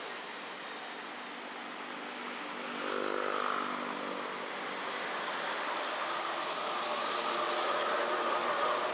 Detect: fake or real real